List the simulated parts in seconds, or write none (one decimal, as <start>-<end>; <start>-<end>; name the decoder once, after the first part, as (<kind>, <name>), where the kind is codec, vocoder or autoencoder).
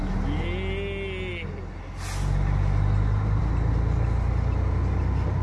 none